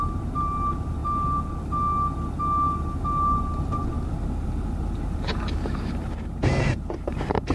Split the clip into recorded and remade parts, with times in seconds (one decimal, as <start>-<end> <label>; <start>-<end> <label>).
0.0-1.0 remade; 1.0-3.0 recorded; 3.0-3.8 remade; 3.8-4.8 recorded; 4.8-7.5 remade

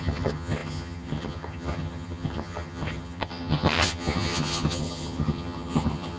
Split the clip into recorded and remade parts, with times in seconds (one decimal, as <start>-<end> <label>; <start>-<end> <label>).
0.0-6.2 remade

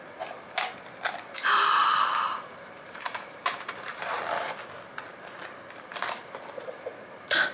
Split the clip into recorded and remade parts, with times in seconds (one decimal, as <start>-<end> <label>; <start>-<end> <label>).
0.0-1.8 recorded; 1.8-4.2 remade; 4.2-7.5 recorded

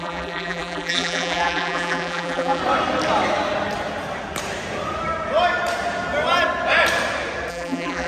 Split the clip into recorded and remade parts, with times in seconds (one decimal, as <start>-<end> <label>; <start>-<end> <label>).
0.0-2.6 remade; 2.6-7.5 recorded; 7.5-8.1 remade

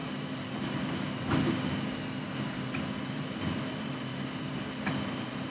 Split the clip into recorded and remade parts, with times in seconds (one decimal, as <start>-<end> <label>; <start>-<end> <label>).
0.0-5.5 recorded

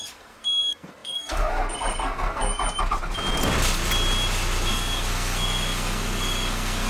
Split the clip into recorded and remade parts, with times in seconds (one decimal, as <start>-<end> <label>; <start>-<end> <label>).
0.0-2.5 remade; 2.5-4.7 recorded; 4.7-6.9 remade